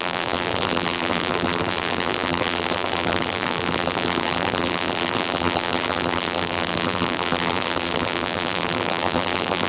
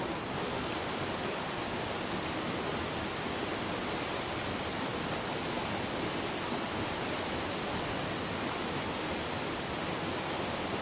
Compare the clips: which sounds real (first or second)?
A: second